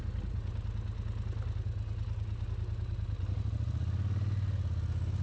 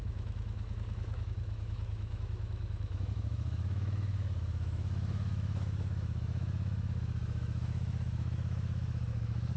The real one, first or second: first